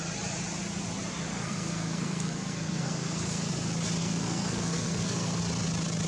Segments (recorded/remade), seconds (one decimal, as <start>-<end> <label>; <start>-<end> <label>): 0.0-1.3 recorded; 1.3-3.5 remade; 3.5-4.0 recorded; 4.0-5.4 remade; 5.4-6.1 recorded